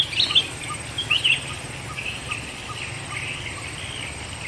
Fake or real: real